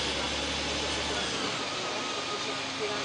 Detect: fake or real real